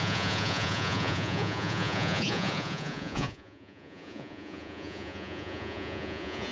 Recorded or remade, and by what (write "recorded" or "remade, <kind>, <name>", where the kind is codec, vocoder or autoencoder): remade, vocoder, Vocos